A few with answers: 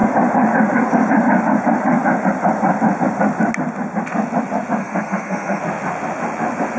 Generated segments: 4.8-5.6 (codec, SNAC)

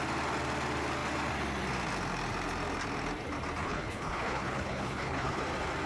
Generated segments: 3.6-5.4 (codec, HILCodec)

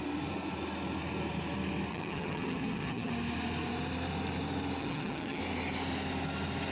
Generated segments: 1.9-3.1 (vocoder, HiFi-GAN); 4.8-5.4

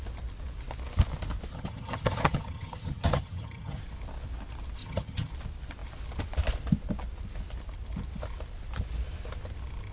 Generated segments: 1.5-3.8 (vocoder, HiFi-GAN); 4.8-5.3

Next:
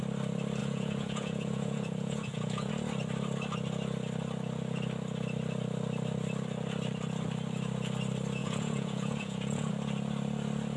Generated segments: 0.6-2.7 (vocoder, Vocos); 8.4-9.7

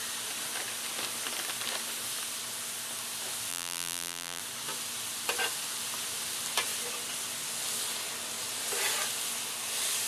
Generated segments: 3.5-4.4 (vocoder, BigVGAN v2)